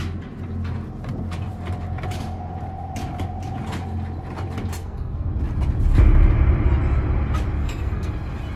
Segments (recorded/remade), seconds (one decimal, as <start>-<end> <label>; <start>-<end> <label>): 0.0-4.8 recorded; 4.8-5.3 remade; 5.3-7.6 recorded; 7.6-8.1 remade; 8.1-8.6 recorded